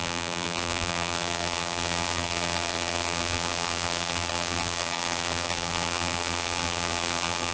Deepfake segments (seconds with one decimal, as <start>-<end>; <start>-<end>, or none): 0.0-7.5